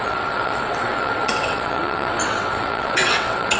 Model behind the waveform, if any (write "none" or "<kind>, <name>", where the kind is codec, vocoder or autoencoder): vocoder, WaveNeXt